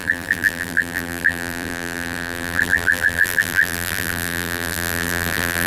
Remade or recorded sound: remade